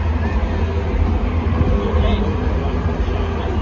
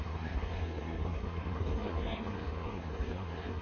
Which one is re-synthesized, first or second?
second